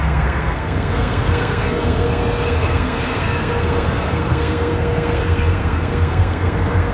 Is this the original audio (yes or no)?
no